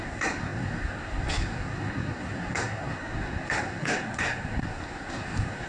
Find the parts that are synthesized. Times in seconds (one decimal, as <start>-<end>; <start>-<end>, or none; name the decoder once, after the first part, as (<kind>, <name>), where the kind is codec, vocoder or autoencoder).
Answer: 0.0-5.7 (codec, SNAC)